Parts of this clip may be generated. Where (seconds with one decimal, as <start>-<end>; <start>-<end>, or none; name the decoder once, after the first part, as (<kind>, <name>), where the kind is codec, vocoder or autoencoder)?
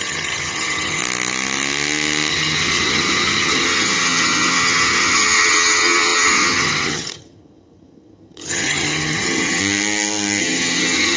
0.0-1.0 (vocoder, HiFi-GAN); 2.3-9.6; 10.4-11.2